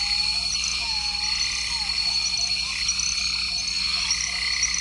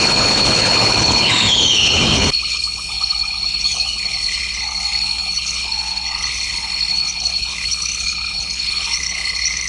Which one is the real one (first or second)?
first